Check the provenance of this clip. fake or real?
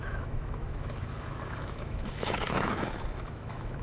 fake